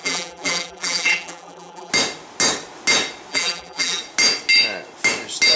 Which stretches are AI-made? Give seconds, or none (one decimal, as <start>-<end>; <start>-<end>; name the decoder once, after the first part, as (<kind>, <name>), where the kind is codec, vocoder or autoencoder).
0.0-1.9 (vocoder, BigVGAN v2); 3.3-4.0